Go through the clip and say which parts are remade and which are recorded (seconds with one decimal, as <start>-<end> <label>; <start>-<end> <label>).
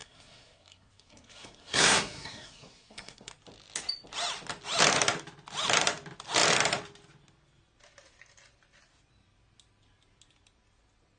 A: 0.0-3.3 remade; 3.3-11.2 recorded